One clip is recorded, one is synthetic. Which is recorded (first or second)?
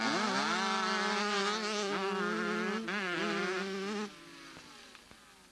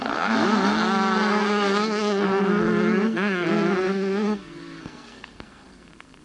first